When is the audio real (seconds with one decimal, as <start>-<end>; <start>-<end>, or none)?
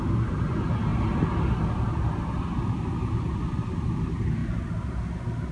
0.0-5.5